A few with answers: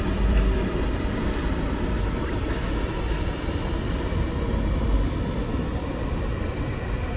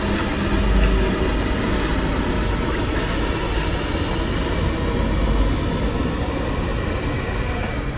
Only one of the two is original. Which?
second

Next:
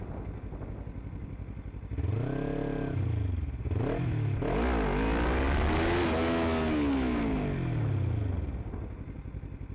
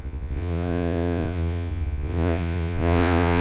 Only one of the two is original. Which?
first